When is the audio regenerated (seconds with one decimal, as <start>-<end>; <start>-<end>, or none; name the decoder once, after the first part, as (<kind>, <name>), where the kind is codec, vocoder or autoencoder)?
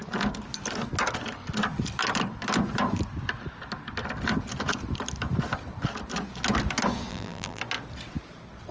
7.1-7.6 (vocoder, BigVGAN v2)